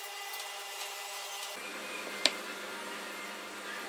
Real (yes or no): yes